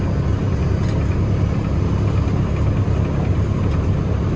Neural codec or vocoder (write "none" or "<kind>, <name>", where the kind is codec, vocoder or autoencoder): none